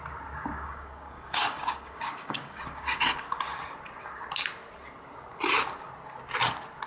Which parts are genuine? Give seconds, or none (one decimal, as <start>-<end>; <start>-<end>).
0.0-0.5; 3.4-6.9